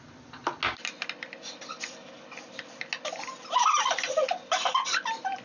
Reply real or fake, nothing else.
real